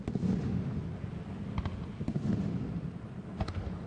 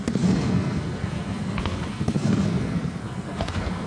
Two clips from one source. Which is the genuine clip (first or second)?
first